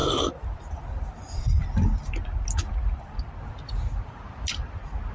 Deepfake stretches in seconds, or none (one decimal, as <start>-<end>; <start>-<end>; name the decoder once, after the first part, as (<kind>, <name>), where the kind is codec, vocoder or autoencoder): none

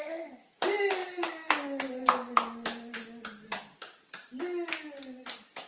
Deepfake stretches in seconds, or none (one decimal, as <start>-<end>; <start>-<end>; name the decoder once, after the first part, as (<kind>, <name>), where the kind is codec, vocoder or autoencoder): none